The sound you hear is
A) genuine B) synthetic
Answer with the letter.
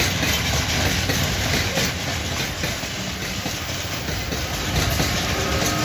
A